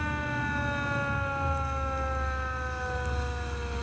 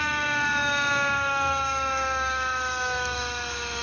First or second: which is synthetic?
second